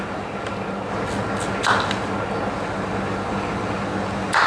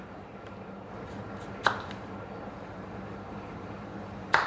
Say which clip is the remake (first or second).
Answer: second